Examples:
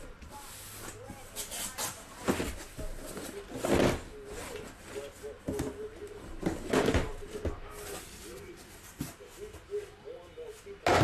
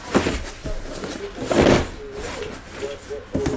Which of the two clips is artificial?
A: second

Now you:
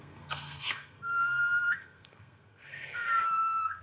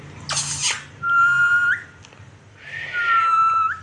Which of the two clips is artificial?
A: first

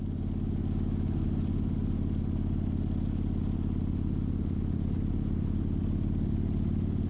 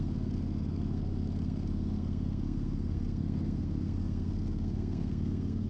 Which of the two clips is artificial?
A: second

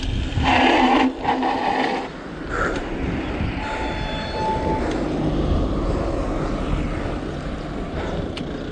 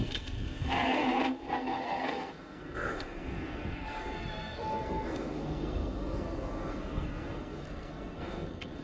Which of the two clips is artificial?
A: second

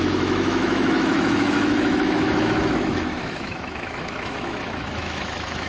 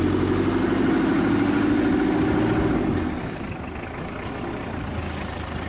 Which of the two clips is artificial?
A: first